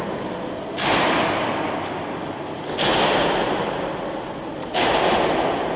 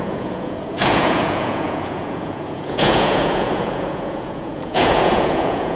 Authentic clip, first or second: first